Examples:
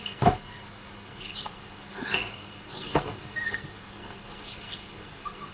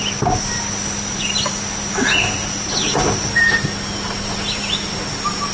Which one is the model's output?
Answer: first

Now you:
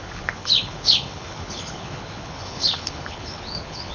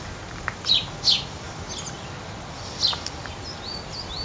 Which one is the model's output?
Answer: first